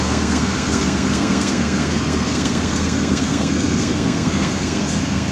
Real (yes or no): no